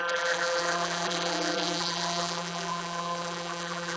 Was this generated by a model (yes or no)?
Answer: yes